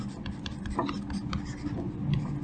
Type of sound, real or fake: real